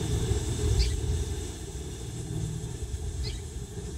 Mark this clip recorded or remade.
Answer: remade